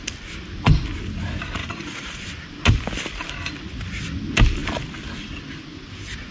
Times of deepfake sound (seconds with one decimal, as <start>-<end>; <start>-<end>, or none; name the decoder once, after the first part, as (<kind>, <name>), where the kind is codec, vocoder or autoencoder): 1.6-2.2 (vocoder, Vocos)